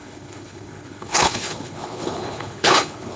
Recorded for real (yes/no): no